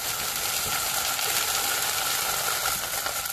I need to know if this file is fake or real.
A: real